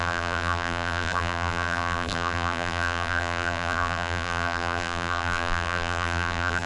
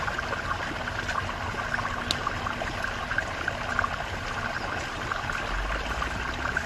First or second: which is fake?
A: first